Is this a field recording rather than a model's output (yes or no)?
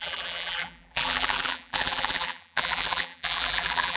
no